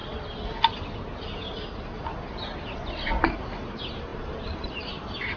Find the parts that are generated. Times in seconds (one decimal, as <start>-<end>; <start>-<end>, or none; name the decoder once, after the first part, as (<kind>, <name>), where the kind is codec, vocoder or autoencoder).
3.2-5.4 (vocoder, BigVGAN v2)